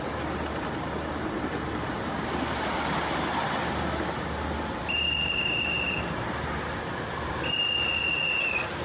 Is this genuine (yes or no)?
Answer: yes